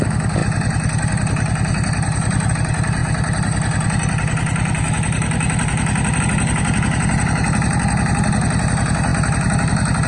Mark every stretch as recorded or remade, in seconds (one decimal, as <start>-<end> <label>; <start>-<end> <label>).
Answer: 0.0-10.1 recorded